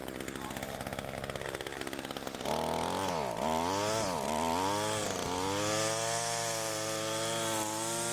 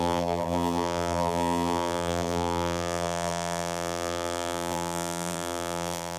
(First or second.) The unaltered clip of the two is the first